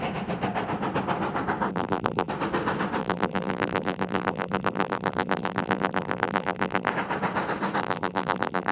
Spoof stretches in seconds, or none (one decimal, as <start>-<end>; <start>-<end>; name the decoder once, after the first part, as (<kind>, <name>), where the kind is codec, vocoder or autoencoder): 1.7-2.3 (vocoder, BigVGAN v2); 3.0-6.9; 7.8-8.7